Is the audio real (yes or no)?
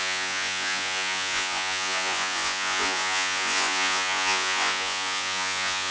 no